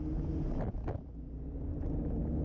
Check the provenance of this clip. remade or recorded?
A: recorded